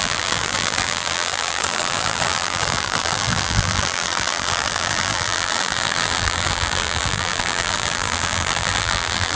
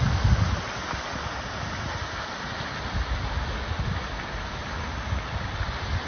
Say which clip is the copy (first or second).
first